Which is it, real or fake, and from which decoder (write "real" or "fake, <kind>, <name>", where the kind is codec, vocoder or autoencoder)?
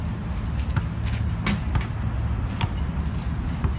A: real